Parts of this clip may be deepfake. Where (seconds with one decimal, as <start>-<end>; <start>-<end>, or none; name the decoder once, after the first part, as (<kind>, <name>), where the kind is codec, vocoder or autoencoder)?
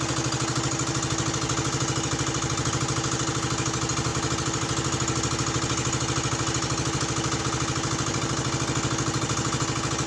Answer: none